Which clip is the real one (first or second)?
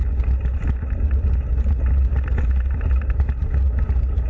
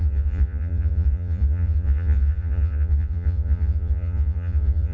first